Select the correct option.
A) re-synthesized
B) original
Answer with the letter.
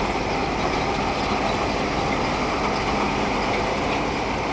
B